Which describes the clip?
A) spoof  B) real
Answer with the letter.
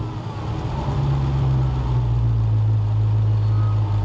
B